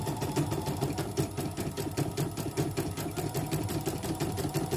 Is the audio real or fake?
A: real